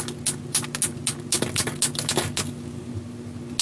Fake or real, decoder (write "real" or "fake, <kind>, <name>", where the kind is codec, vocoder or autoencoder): real